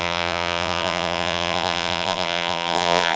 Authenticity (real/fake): fake